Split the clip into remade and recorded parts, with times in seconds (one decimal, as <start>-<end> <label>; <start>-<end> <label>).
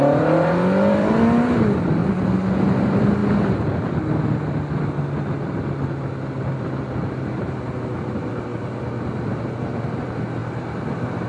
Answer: 0.0-2.0 remade; 2.0-2.8 recorded; 2.8-3.2 remade; 3.2-6.6 recorded; 6.6-11.3 remade